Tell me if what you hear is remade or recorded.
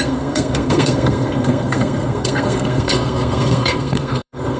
remade